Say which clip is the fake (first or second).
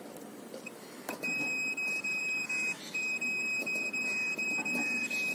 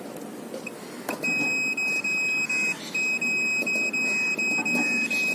first